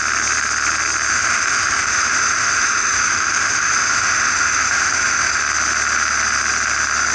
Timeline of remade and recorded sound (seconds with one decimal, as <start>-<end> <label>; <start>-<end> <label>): 0.0-1.1 recorded; 1.1-5.4 remade; 5.4-7.1 recorded